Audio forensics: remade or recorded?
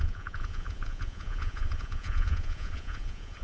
remade